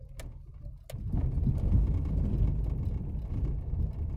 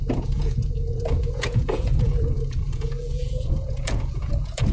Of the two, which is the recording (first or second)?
first